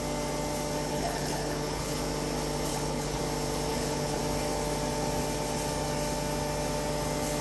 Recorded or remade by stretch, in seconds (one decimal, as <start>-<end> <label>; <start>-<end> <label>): 0.0-0.9 recorded; 0.9-2.0 remade; 2.0-2.7 recorded; 2.7-3.2 remade; 3.2-3.7 recorded; 3.7-4.2 remade; 4.2-7.4 recorded